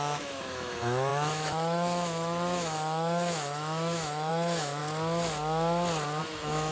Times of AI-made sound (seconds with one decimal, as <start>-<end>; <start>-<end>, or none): 0.0-4.8; 6.2-6.7